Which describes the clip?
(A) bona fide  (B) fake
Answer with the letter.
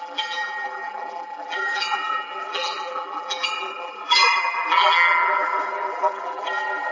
B